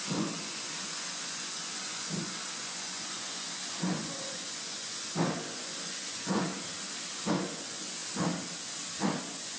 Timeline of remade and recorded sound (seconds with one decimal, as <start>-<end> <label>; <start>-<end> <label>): 0.0-6.5 remade; 6.5-7.1 recorded; 7.1-8.0 remade; 8.0-9.2 recorded; 9.2-9.6 remade